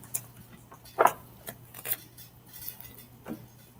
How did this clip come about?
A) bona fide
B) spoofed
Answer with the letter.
A